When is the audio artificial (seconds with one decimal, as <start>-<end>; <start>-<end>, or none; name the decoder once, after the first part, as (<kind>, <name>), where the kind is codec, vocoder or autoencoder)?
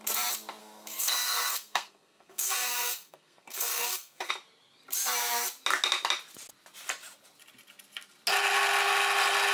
0.6-4.3 (codec, SNAC)